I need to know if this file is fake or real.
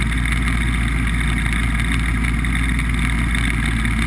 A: real